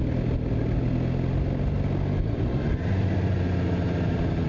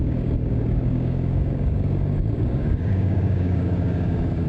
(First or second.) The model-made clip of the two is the second